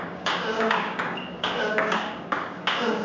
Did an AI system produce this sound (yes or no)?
yes